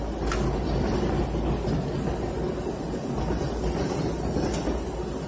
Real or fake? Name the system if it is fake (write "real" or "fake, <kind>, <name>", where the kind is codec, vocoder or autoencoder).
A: real